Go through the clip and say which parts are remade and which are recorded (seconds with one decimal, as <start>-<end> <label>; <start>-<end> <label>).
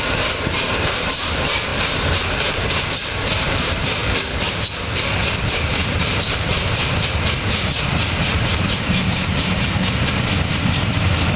0.0-4.0 remade; 4.0-5.3 recorded; 5.3-6.5 remade; 6.5-8.3 recorded; 8.3-11.4 remade